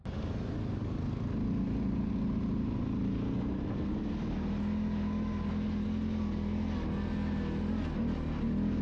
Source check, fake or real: real